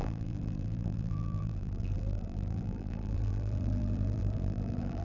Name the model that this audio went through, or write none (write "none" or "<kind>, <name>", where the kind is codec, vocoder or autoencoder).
vocoder, BigVGAN v2